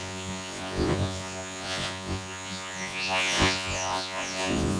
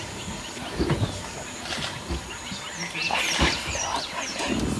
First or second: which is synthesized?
first